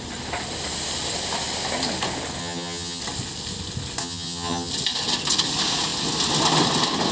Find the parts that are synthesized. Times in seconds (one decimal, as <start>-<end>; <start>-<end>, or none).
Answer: 2.4-3.0; 4.0-4.7